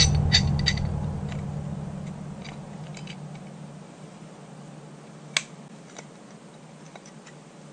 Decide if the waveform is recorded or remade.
recorded